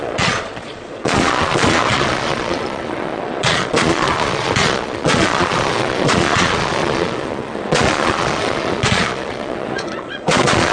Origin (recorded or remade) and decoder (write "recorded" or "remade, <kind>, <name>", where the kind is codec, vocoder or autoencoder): remade, vocoder, Vocos